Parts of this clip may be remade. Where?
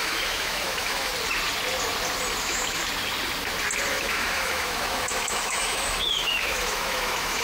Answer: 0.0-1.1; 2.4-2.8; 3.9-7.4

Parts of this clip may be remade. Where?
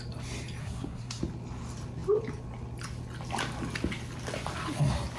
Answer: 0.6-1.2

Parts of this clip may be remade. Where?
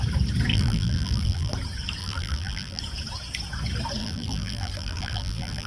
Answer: 0.5-1.5; 2.0-2.8; 4.0-5.7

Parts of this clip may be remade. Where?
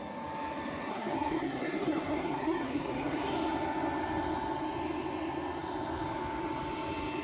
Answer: 0.9-3.3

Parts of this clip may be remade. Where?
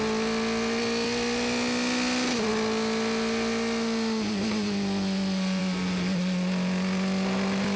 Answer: none